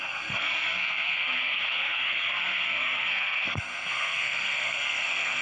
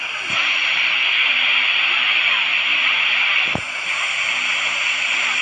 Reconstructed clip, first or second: first